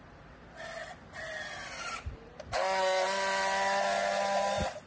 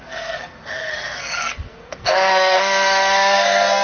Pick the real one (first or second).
first